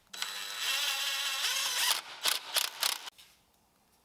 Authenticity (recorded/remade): recorded